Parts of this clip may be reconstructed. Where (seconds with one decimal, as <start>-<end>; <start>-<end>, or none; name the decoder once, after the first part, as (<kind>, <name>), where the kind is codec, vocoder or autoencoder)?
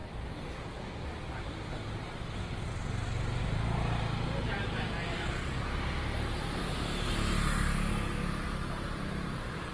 none